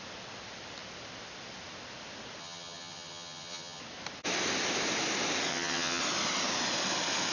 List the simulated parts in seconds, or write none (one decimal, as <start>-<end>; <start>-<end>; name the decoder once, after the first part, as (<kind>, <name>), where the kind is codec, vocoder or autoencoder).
2.4-3.8 (vocoder, HiFi-GAN); 5.5-6.0